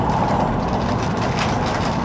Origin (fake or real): real